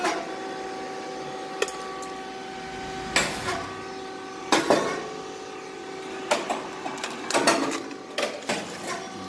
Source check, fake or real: real